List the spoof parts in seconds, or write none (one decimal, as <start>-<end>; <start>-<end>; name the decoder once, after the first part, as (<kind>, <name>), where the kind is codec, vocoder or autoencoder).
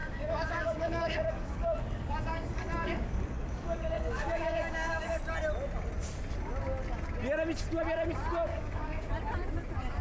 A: 0.0-5.2 (codec, DAC); 8.5-9.1